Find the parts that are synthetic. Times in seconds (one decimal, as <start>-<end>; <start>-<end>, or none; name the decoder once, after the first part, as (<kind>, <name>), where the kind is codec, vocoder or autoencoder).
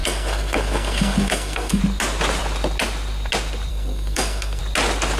0.0-1.8 (codec, SNAC); 3.7-4.6